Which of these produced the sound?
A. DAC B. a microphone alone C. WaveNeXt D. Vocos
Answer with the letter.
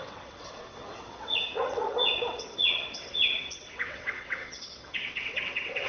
C